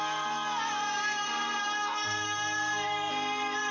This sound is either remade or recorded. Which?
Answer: recorded